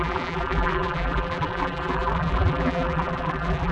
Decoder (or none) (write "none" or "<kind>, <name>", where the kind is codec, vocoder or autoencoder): vocoder, BigVGAN v2